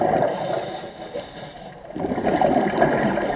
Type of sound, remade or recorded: recorded